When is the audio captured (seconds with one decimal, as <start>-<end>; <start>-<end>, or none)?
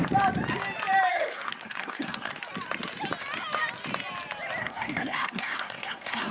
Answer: 0.0-1.1; 2.3-4.6